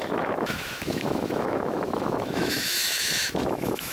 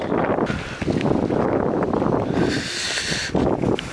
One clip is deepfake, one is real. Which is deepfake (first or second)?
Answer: first